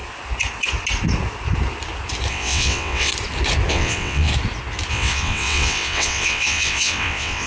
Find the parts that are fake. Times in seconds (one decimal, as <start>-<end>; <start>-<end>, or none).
2.3-3.1; 3.7-4.3; 4.9-7.5